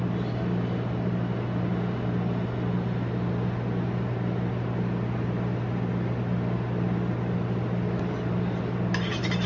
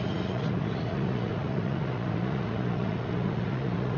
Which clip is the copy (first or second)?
second